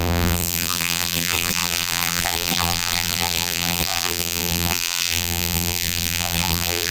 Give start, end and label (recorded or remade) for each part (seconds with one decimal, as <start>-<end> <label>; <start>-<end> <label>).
0.0-6.9 remade